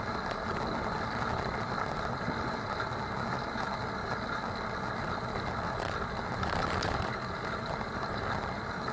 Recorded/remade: recorded